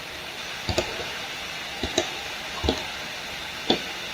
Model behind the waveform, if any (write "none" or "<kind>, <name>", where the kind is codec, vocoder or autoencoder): none